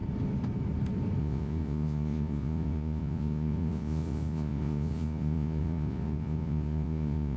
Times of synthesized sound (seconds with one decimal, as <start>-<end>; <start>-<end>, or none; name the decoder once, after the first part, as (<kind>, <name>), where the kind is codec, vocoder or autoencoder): 1.2-7.4 (vocoder, Vocos)